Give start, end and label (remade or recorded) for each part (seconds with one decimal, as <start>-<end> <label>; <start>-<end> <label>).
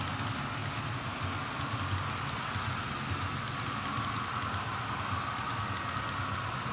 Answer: 0.0-6.7 recorded